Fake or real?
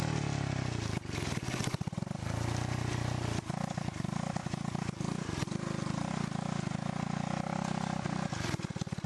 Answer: real